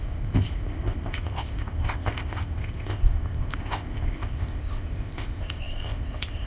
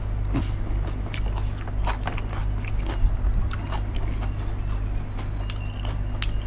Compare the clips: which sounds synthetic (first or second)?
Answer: first